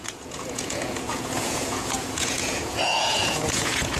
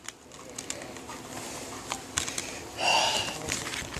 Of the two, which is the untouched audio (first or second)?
second